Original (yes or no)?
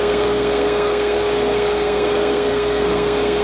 no